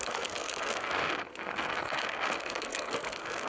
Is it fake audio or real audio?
fake